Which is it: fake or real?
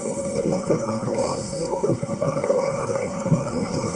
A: fake